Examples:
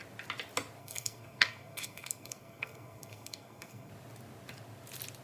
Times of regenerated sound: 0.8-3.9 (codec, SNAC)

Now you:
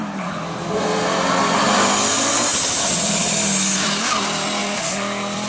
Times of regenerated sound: 2.5-3.2 (vocoder, BigVGAN v2); 4.6-5.5

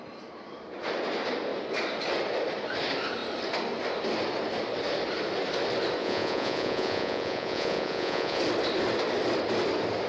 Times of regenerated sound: 6.0-8.4 (vocoder, Vocos)